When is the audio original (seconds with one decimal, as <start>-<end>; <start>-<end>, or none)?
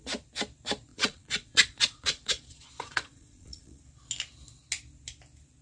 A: 0.0-0.9; 3.8-5.6